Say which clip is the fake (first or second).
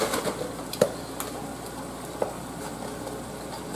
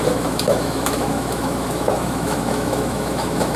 second